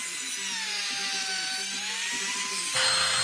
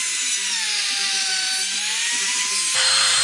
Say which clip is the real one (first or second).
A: first